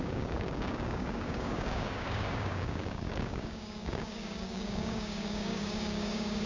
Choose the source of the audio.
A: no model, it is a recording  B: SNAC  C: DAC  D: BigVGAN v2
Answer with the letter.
C